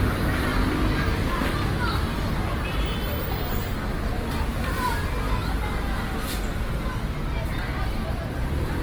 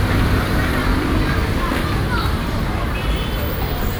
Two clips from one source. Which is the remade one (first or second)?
second